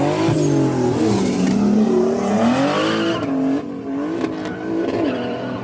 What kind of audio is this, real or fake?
real